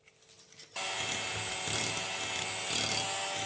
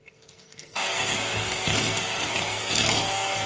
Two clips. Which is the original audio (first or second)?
first